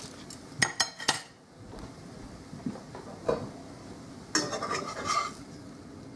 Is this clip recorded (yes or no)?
yes